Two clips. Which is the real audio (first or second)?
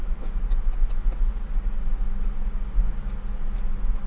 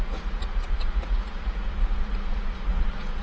first